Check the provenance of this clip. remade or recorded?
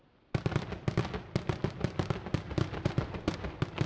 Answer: recorded